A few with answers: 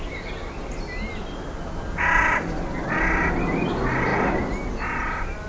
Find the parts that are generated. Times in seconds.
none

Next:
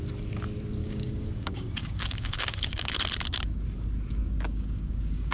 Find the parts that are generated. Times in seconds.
0.8-2.9 (codec, DAC); 4.5-5.3